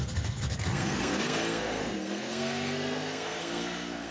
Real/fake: fake